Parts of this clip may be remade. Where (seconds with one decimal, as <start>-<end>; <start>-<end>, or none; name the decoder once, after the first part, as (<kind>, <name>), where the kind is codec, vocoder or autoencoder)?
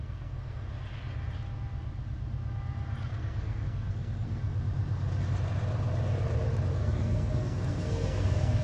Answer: 0.0-0.7 (codec, SNAC); 3.1-4.4; 6.7-8.6